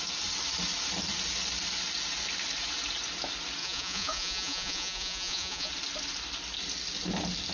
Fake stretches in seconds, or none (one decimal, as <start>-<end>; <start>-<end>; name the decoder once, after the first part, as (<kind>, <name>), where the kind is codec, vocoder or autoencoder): 3.6-5.7 (vocoder, Vocos)